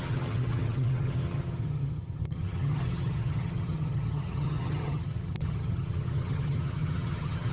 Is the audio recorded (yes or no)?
no